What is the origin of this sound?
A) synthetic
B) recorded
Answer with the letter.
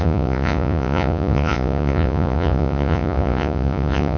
A